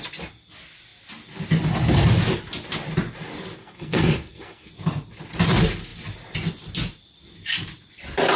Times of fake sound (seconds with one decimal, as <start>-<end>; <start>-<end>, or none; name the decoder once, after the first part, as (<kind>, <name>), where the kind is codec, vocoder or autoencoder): 3.6-4.7 (codec, SNAC)